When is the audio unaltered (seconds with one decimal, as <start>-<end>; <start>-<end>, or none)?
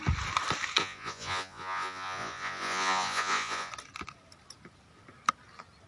0.0-0.8; 3.7-5.9